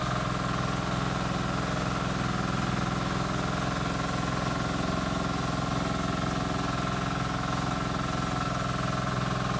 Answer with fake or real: real